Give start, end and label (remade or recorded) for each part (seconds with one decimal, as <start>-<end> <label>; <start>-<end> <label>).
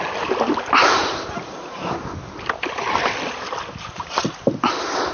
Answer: 0.0-5.1 recorded